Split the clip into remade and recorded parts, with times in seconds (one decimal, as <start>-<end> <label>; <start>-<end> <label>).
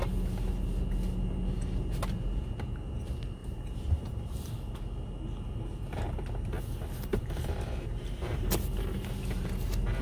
0.0-3.4 recorded; 3.4-4.5 remade; 4.5-7.1 recorded; 7.1-8.6 remade; 8.6-10.0 recorded